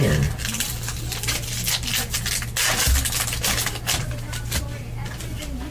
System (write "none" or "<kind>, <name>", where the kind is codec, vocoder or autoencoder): none